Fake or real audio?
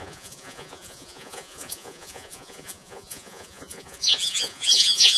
fake